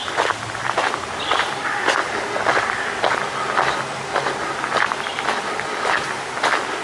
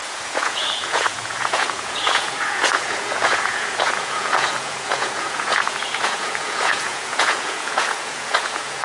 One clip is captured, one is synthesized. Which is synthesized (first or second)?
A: second